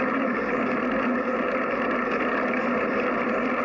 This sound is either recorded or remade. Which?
recorded